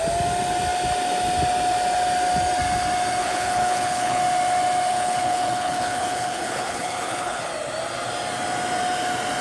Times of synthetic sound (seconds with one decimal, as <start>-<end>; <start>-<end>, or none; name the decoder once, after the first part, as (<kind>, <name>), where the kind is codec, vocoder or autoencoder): 3.2-4.2 (codec, HILCodec); 4.9-7.4